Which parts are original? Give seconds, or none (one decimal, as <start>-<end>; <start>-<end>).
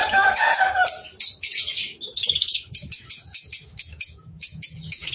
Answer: 0.7-1.9